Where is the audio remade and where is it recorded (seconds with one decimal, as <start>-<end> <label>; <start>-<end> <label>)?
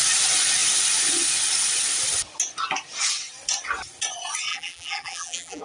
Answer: 0.0-4.5 recorded; 4.5-5.6 remade